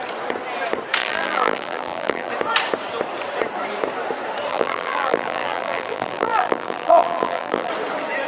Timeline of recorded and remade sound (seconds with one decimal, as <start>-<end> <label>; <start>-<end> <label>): 0.0-1.0 recorded; 1.0-2.3 remade; 2.3-4.5 recorded; 4.5-7.7 remade; 7.7-8.3 recorded